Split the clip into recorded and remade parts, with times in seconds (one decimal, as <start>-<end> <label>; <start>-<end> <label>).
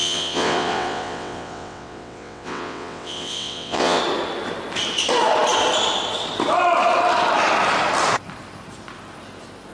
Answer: 0.0-4.0 remade; 4.0-9.7 recorded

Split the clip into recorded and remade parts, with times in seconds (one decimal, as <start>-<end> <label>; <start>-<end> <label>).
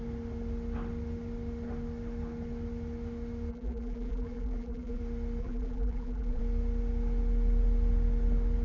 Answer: 0.0-3.5 recorded; 3.5-5.0 remade; 5.0-5.4 recorded; 5.4-6.4 remade; 6.4-8.6 recorded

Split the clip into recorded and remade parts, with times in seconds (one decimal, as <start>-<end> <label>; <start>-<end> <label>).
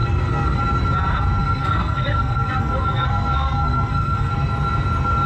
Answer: 0.0-0.6 remade; 0.6-1.4 recorded; 1.4-4.3 remade; 4.3-5.3 recorded